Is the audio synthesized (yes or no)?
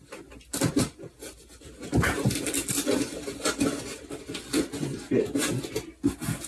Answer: no